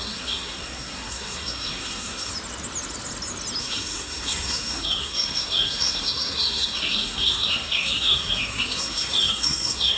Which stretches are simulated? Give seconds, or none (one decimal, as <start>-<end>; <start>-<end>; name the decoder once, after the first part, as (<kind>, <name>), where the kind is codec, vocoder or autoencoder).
0.0-2.3 (codec, SNAC); 3.6-10.0

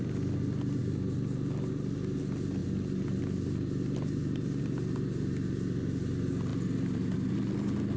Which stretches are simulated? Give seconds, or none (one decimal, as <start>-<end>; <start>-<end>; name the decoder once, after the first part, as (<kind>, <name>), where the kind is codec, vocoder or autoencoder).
none